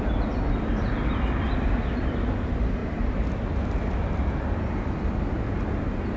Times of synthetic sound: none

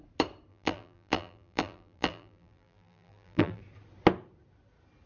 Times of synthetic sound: 0.5-3.6 (vocoder, BigVGAN v2)